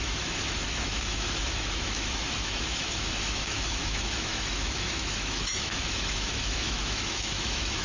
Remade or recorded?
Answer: remade